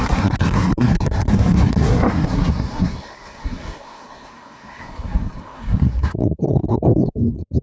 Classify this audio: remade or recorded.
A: remade